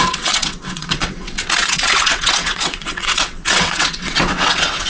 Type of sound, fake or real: fake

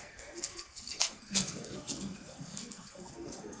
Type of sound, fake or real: fake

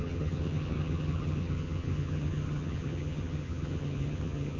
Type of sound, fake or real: fake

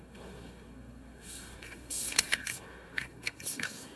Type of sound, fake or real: fake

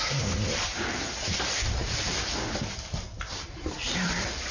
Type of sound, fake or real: fake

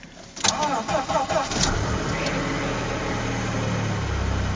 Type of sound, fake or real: real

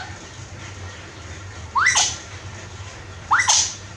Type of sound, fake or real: real